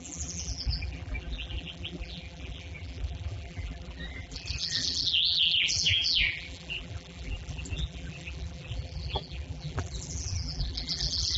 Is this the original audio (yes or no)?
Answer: no